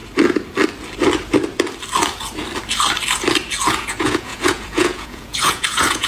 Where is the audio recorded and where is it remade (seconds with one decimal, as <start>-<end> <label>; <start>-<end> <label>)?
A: 0.0-3.7 recorded; 3.7-6.1 remade